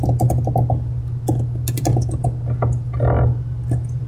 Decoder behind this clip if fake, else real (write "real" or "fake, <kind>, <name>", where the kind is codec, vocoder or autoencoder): real